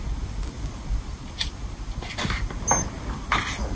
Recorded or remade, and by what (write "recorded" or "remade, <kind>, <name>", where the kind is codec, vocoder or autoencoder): recorded